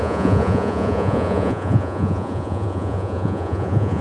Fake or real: fake